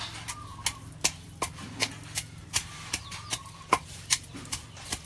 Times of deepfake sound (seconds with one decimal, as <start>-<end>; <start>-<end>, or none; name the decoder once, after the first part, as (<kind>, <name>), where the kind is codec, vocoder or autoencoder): 2.4-4.1 (vocoder, BigVGAN v2)